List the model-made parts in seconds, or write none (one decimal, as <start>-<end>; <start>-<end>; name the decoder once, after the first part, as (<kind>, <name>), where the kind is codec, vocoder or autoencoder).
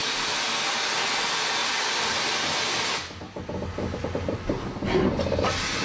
none